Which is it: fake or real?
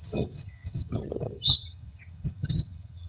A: fake